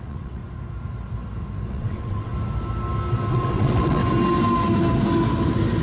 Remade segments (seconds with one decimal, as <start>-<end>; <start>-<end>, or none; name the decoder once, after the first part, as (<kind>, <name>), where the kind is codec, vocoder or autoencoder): 0.0-0.4 (vocoder, WaveNeXt); 1.7-2.3; 3.3-4.0